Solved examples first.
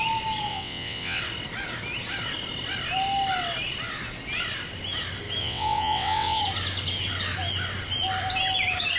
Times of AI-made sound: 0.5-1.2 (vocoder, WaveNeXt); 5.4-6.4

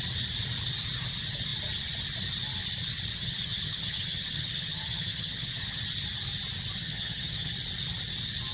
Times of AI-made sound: 3.1-5.8 (vocoder, HiFi-GAN); 6.8-7.5